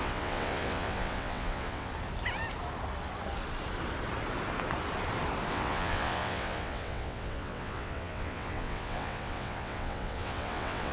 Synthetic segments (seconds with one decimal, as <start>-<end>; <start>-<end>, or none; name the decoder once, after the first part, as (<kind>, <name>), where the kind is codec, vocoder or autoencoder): 0.0-1.9 (vocoder, WaveNeXt); 5.5-10.9